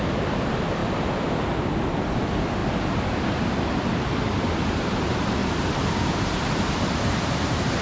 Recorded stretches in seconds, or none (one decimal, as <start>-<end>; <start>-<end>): 0.0-5.4